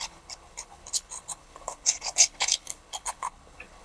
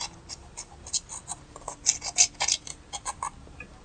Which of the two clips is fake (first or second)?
first